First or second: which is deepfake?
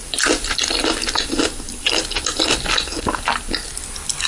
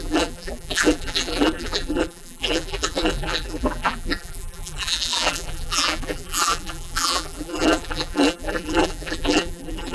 second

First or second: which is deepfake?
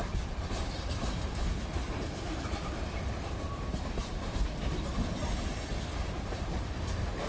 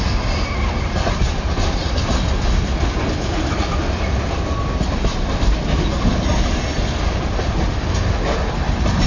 first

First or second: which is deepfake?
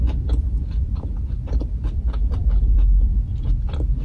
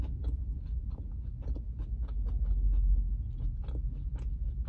first